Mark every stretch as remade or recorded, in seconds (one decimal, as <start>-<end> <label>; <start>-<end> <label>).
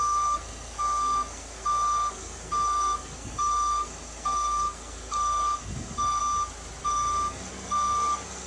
0.0-6.2 remade; 6.2-6.8 recorded; 6.8-8.5 remade